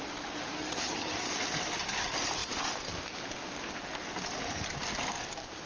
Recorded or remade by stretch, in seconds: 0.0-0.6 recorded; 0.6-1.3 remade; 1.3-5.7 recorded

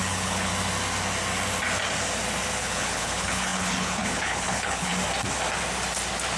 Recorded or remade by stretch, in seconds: 0.0-0.5 remade; 0.5-2.6 recorded; 2.6-4.9 remade; 4.9-6.4 recorded

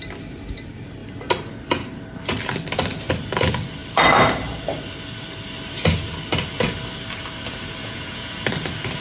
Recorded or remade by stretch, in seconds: 0.0-7.8 recorded; 7.8-8.3 remade; 8.3-9.0 recorded

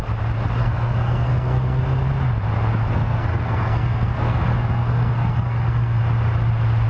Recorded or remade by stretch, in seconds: 0.0-0.6 recorded; 0.6-1.8 remade; 1.8-2.9 recorded; 2.9-6.0 remade; 6.0-6.9 recorded

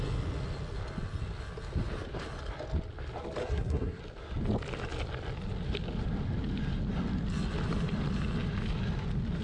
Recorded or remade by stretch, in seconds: 0.0-3.4 recorded; 3.4-4.0 remade; 4.0-9.4 recorded

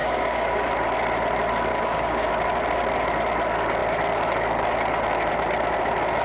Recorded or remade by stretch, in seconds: 0.0-0.7 remade; 0.7-1.7 recorded; 1.7-2.3 remade; 2.3-6.2 recorded